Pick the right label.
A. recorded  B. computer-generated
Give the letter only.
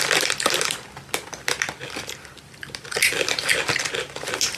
A